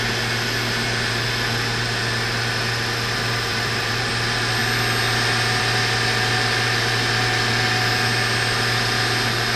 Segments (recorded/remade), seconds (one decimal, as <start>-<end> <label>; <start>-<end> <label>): 0.0-3.5 recorded; 3.5-4.1 remade; 4.1-9.6 recorded